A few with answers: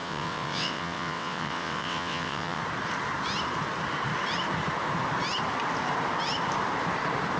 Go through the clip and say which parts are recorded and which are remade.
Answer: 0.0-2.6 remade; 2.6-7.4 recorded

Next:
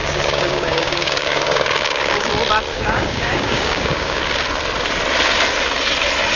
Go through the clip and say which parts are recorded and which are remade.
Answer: 0.0-2.3 remade; 2.3-2.7 recorded; 2.7-4.2 remade; 4.2-6.4 recorded